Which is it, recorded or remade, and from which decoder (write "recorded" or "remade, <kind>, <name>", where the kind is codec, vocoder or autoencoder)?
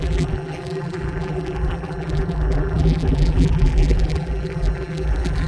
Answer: remade, vocoder, BigVGAN v2